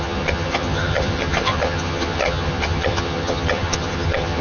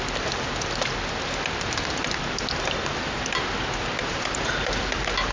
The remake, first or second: first